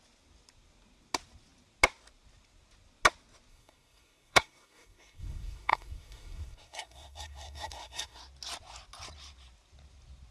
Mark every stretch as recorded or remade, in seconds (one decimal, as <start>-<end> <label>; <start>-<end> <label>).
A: 0.0-3.5 recorded; 3.5-8.2 remade; 8.2-10.3 recorded